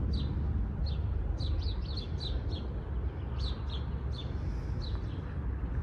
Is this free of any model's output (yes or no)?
yes